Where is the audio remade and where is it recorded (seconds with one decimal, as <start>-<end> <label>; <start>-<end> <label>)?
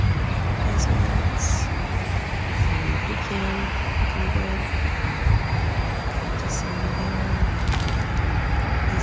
0.0-9.0 recorded